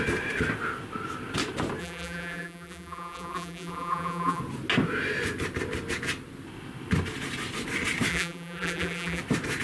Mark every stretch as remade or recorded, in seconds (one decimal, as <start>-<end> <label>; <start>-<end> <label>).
0.0-1.8 recorded; 1.8-4.4 remade; 4.4-8.1 recorded; 8.1-9.2 remade; 9.2-9.6 recorded